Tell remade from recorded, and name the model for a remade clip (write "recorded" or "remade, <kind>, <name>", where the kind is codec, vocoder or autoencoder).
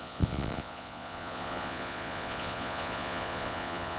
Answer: remade, vocoder, Vocos